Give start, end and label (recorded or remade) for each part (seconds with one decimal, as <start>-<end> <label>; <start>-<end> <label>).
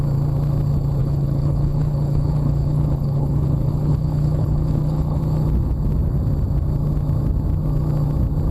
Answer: 0.0-1.0 recorded; 1.0-5.2 remade; 5.2-8.5 recorded